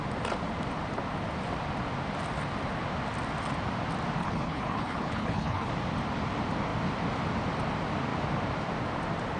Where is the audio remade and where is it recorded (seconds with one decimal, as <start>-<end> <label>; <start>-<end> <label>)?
0.0-4.2 recorded; 4.2-5.7 remade; 5.7-9.4 recorded